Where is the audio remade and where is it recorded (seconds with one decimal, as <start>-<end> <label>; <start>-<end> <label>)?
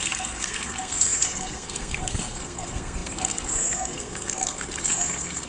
0.0-5.5 remade